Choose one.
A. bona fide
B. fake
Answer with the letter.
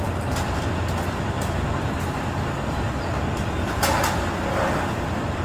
A